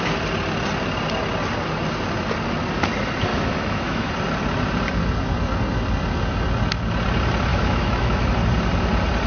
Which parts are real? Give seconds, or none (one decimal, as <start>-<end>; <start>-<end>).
0.0-3.3; 4.1-7.5; 8.3-9.3